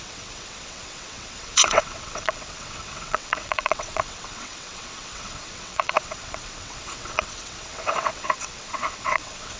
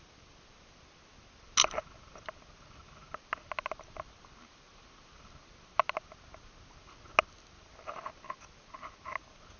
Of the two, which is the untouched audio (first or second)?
second